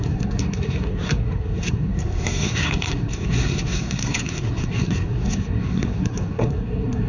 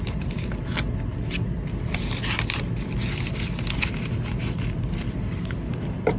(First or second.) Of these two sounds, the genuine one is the second